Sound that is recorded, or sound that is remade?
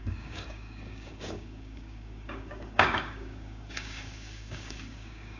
remade